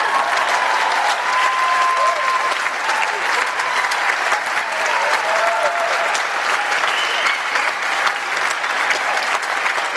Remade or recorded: recorded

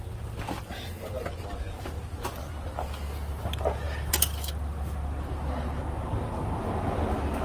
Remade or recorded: recorded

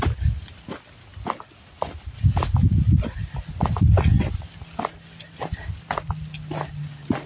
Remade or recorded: recorded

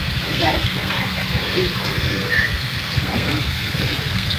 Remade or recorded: remade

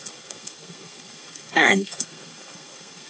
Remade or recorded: remade